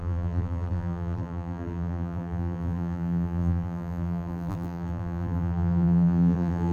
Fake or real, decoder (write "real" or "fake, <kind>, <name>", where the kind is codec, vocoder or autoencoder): fake, vocoder, BigVGAN v2